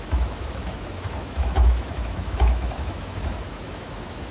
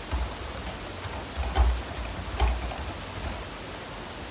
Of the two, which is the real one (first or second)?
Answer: second